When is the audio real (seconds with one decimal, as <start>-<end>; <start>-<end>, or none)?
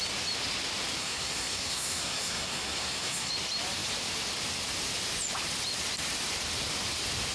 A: 0.0-1.0; 3.3-7.3